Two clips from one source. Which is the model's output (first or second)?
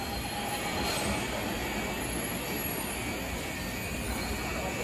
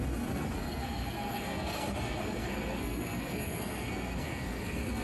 second